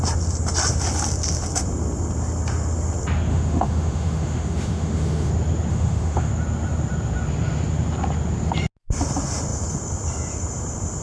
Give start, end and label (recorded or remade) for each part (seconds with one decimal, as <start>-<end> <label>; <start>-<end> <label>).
0.0-3.3 recorded; 3.3-5.3 remade; 5.3-5.7 recorded; 5.7-6.3 remade; 6.3-11.0 recorded